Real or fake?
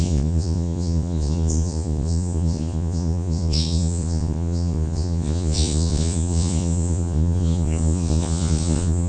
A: fake